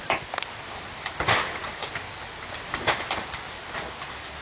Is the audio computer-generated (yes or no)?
no